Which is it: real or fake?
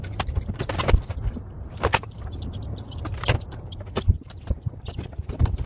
fake